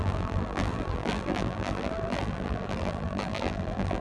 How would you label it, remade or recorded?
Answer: remade